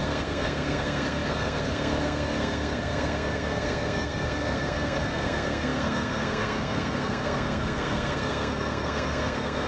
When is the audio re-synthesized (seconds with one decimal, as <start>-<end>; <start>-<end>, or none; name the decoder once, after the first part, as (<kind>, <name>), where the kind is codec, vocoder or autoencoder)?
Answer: 0.0-9.7 (codec, SNAC)